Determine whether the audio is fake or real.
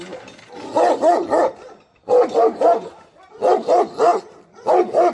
real